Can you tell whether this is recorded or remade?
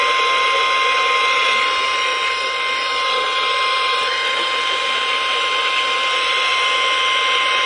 recorded